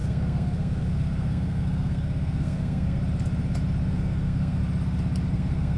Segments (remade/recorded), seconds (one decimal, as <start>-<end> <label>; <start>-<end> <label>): 0.0-3.0 remade; 3.0-3.9 recorded; 3.9-4.6 remade; 4.6-5.3 recorded; 5.3-5.8 remade